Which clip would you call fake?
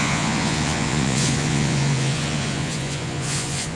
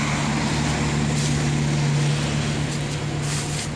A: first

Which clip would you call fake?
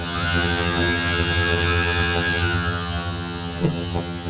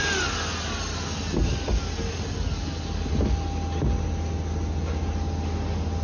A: first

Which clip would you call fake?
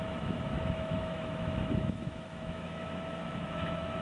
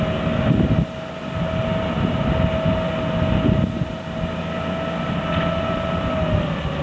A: first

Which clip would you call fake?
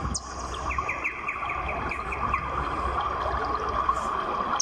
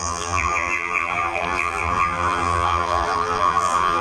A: second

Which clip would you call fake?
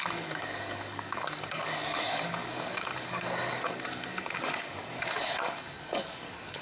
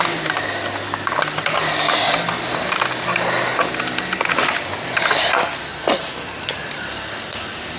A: first